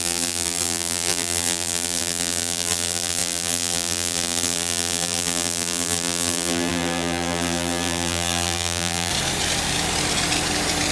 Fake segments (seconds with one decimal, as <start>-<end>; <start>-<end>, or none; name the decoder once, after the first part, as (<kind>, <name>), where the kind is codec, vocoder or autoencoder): 0.0-9.1 (vocoder, BigVGAN v2)

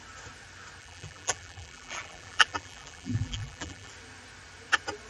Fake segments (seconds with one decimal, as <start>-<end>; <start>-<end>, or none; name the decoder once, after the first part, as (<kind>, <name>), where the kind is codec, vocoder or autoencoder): 0.8-3.9 (vocoder, BigVGAN v2)

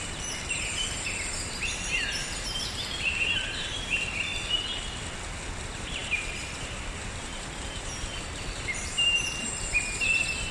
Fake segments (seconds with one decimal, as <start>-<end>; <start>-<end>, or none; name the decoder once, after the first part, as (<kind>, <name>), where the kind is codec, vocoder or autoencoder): 0.0-4.3 (vocoder, BigVGAN v2); 5.6-10.5

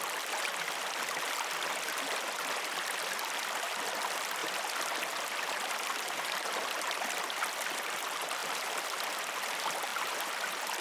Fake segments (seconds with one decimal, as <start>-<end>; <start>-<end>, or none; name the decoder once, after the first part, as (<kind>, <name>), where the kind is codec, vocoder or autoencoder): 8.4-9.2 (vocoder, BigVGAN v2); 9.9-10.8

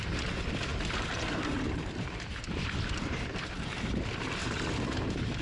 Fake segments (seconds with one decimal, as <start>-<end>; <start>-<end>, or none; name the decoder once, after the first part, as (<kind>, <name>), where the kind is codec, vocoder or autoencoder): 0.7-3.9 (vocoder, BigVGAN v2); 4.4-5.0